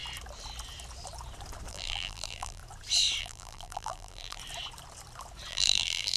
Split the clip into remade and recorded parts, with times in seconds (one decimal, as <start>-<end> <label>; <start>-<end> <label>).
0.0-1.7 recorded; 1.7-2.6 remade; 2.6-3.2 recorded; 3.2-4.4 remade; 4.4-5.5 recorded; 5.5-6.2 remade

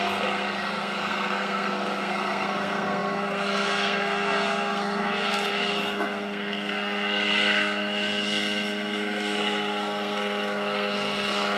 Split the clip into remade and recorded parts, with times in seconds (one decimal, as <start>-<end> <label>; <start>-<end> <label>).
0.0-11.6 remade